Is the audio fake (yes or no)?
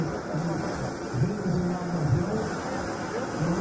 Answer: no